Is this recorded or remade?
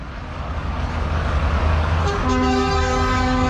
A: remade